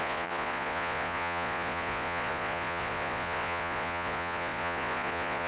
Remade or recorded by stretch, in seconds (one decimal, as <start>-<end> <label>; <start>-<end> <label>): 0.0-5.5 remade